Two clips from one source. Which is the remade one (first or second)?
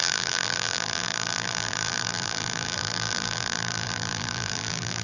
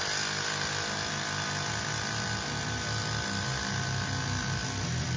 first